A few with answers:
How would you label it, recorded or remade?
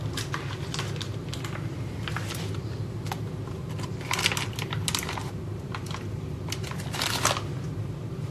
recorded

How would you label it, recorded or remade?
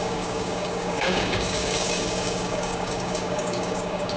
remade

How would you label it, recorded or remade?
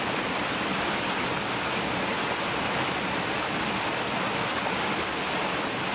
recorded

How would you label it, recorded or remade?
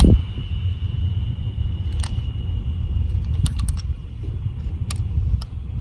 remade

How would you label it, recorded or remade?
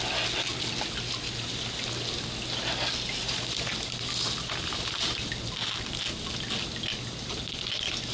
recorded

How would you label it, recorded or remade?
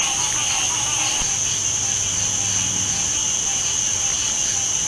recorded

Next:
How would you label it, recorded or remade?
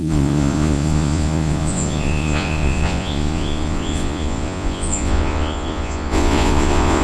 remade